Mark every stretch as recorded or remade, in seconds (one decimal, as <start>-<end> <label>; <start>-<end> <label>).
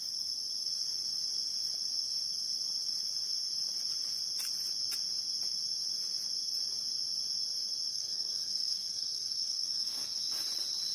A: 0.0-7.9 recorded; 7.9-10.2 remade; 10.2-10.9 recorded